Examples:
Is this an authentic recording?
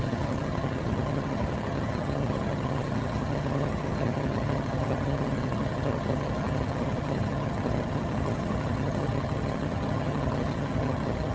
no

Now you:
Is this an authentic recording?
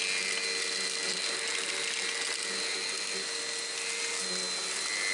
yes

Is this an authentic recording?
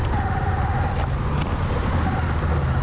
yes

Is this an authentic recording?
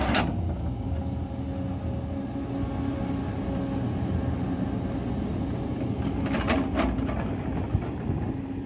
yes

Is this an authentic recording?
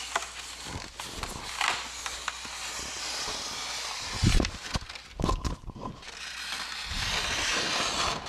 yes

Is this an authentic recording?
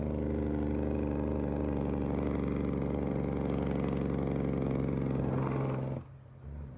yes